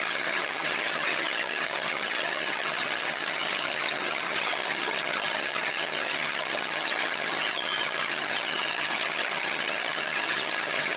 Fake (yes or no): yes